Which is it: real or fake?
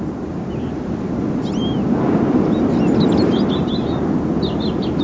real